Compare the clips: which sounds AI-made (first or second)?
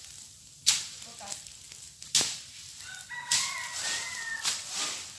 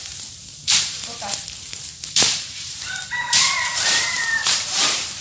second